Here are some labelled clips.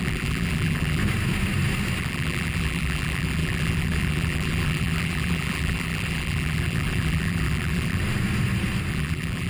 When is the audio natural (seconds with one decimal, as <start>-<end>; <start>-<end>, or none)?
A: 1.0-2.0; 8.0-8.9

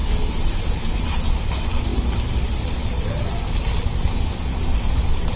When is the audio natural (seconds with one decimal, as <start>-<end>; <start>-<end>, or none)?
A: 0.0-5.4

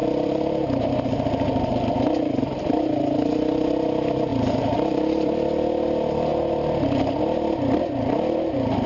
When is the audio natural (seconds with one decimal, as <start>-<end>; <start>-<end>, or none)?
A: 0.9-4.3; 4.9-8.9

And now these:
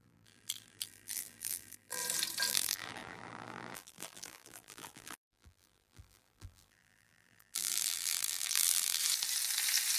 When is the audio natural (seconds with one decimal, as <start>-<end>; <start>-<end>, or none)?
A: 2.0-2.5; 9.0-10.0

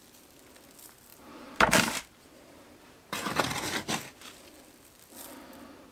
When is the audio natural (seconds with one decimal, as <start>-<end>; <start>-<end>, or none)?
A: 0.0-1.1; 3.9-5.9

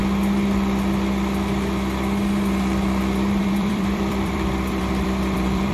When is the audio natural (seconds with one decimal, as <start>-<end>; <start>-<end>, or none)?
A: 0.0-3.4

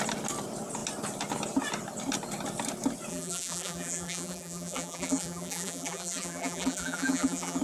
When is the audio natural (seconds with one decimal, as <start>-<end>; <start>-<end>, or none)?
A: 0.0-3.1

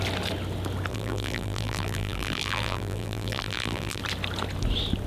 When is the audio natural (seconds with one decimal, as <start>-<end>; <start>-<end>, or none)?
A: 0.0-0.9; 4.0-5.1